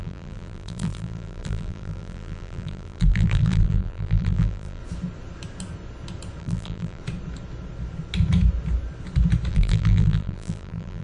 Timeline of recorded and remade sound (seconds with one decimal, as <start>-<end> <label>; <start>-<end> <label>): 0.0-4.8 remade; 4.8-6.4 recorded; 6.4-7.0 remade; 7.0-9.5 recorded; 9.5-11.0 remade